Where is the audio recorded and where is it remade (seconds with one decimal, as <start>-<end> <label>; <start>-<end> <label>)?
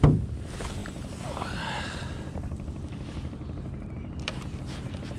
0.0-5.2 recorded